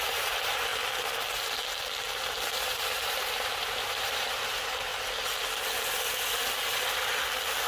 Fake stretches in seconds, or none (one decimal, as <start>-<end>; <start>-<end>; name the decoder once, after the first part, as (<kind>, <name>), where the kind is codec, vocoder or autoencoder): 0.0-0.7 (vocoder, BigVGAN v2); 2.4-4.9